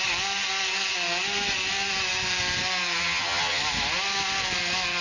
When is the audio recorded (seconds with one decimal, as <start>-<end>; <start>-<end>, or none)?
0.0-3.0; 3.6-5.0